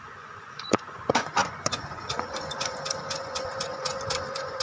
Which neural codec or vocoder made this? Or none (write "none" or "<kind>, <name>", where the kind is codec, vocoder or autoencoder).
vocoder, Vocos